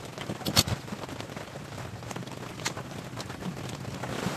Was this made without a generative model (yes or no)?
yes